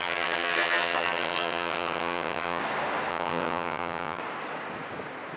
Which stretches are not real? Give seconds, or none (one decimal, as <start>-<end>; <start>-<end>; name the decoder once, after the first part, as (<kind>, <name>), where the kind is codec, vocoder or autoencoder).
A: 0.0-2.6 (vocoder, HiFi-GAN); 3.1-4.2